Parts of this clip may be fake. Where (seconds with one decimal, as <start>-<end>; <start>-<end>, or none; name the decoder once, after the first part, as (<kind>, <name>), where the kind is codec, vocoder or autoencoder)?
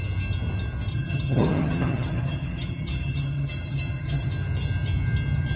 0.9-4.3 (vocoder, HiFi-GAN)